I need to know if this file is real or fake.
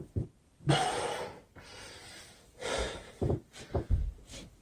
fake